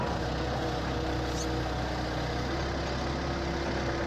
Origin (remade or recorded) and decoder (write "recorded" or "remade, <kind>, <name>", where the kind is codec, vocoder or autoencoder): recorded